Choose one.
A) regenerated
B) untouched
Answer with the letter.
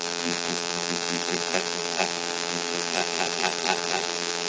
A